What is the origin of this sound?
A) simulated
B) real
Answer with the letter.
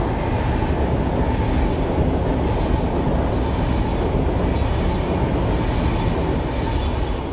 B